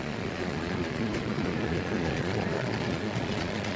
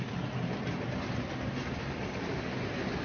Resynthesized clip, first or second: first